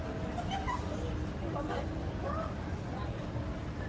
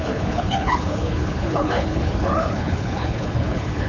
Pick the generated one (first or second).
second